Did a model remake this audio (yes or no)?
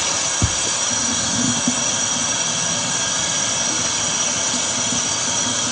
no